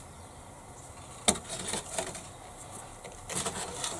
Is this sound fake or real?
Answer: real